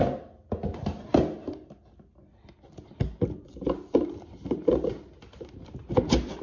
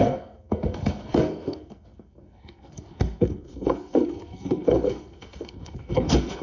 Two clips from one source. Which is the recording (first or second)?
first